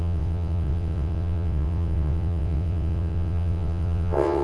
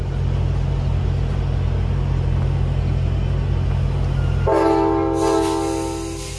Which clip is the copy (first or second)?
first